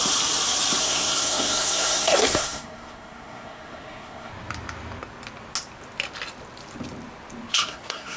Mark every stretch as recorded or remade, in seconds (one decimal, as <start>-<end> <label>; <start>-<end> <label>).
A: 0.0-0.8 recorded; 0.8-4.3 remade; 4.3-7.5 recorded; 7.5-8.2 remade